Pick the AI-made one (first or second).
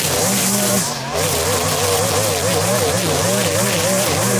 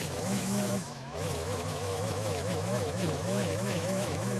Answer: second